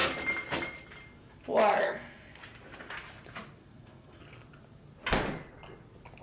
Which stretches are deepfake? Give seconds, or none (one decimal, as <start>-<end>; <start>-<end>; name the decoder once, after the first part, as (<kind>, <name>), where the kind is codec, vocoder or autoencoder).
1.8-2.4 (codec, SNAC); 3.6-4.2